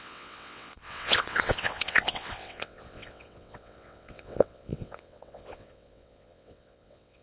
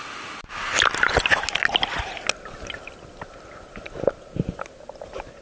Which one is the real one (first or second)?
second